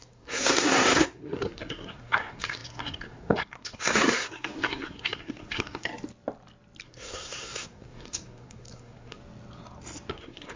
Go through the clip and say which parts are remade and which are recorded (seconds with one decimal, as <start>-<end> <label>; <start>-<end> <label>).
0.0-5.9 remade; 5.9-6.8 recorded; 6.8-9.2 remade; 9.2-10.1 recorded; 10.1-10.6 remade